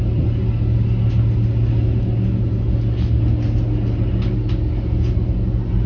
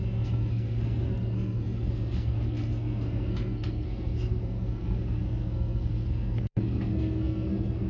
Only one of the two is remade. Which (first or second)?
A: second